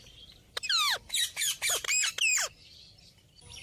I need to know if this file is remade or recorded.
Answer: remade